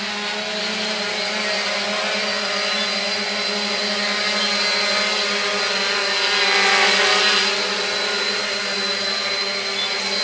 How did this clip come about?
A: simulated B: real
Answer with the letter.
B